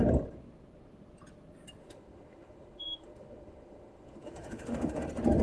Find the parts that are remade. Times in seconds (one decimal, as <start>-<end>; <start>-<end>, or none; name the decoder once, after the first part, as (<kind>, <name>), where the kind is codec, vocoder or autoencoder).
1.8-5.0 (autoencoder, DAC-VAE)